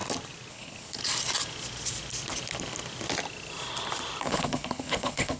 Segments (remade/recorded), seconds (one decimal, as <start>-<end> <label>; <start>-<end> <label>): 0.0-0.5 recorded; 0.5-1.0 remade; 1.0-4.2 recorded; 4.2-5.4 remade